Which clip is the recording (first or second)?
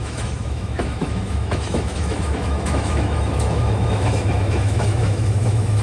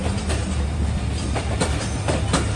second